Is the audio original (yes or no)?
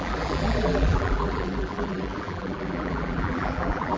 no